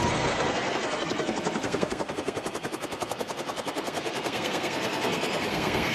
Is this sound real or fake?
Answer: fake